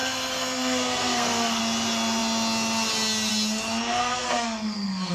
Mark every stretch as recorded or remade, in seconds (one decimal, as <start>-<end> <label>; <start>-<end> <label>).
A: 0.0-1.6 remade; 1.6-4.0 recorded; 4.0-5.1 remade